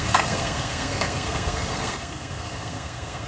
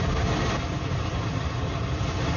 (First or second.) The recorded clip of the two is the second